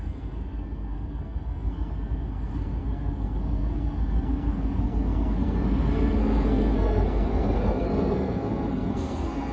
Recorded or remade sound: remade